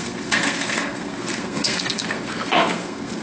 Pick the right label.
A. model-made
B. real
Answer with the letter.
A